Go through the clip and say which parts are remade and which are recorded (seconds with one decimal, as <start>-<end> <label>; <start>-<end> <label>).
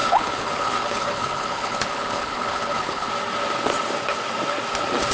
0.0-3.1 remade; 3.1-5.1 recorded